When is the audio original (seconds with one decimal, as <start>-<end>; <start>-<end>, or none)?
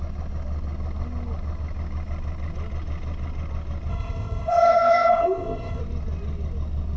0.0-3.9; 5.8-7.0